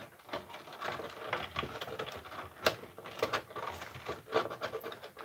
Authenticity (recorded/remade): recorded